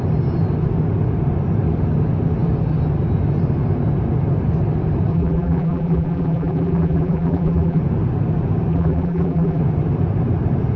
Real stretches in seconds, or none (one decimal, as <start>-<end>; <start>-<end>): 0.0-5.1; 7.8-8.7; 9.6-10.8